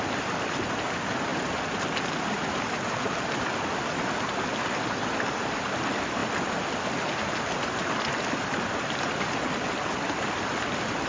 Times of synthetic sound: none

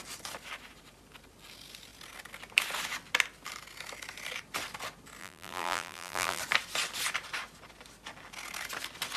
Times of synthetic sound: 5.2-6.4 (vocoder, BigVGAN v2)

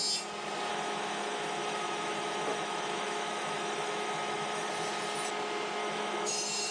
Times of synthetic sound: 0.7-4.7 (autoencoder, DAC-VAE); 5.8-6.7

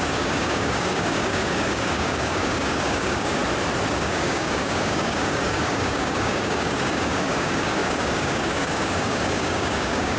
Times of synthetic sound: 0.0-3.4 (codec, DAC); 3.9-10.2

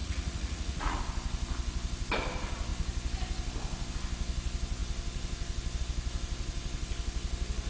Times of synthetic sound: 0.0-1.0 (vocoder, Vocos)